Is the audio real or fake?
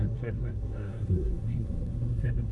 fake